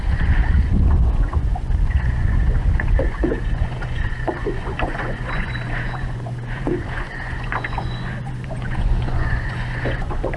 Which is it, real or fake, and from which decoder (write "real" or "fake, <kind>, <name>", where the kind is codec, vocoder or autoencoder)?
fake, vocoder, Vocos